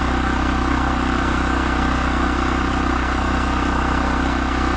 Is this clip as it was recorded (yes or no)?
no